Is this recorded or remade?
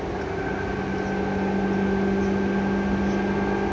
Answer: recorded